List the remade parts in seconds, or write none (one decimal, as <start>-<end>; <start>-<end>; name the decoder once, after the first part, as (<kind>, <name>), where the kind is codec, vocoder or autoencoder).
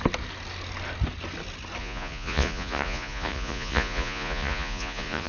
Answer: 1.8-5.3 (vocoder, Vocos)